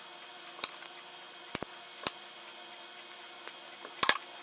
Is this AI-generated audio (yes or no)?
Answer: no